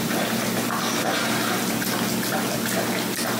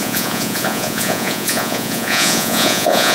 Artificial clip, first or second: second